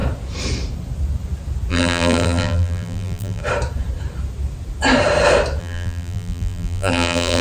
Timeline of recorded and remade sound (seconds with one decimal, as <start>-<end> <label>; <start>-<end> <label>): 0.0-1.7 recorded; 1.7-3.4 remade; 3.4-5.6 recorded; 5.6-7.4 remade